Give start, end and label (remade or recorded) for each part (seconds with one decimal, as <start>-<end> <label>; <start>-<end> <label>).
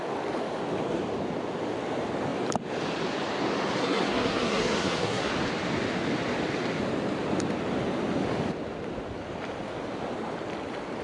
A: 0.0-3.8 recorded; 3.8-5.3 remade; 5.3-11.0 recorded